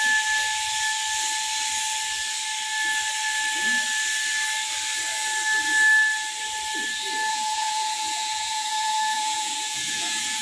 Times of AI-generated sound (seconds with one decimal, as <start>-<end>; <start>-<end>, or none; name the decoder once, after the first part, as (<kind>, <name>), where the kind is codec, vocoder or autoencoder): 7.3-10.4 (vocoder, Vocos)